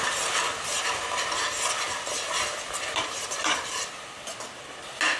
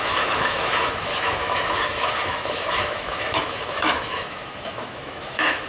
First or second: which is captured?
first